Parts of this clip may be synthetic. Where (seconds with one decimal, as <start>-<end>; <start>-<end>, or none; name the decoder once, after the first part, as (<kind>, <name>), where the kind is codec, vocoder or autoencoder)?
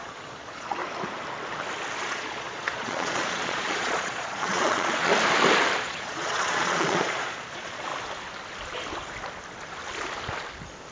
0.0-0.8 (vocoder, Vocos); 2.0-5.1; 5.8-7.9